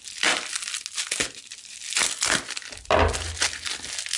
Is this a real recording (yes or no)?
yes